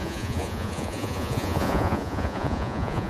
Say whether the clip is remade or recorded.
remade